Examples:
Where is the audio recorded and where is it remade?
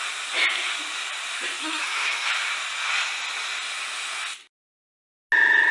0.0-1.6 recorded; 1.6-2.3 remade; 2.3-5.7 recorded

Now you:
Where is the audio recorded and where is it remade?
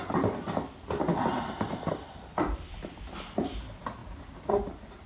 0.0-3.1 remade; 3.1-5.1 recorded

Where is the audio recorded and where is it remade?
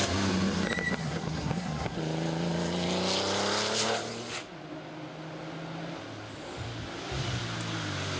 0.0-1.0 recorded; 1.0-2.0 remade; 2.0-8.2 recorded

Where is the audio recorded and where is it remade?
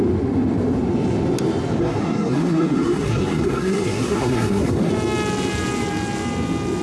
0.0-1.8 recorded; 1.8-4.9 remade; 4.9-6.8 recorded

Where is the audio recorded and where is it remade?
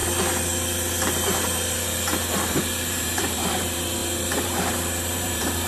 0.0-2.6 recorded; 2.6-5.7 remade